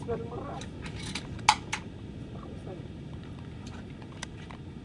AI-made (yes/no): no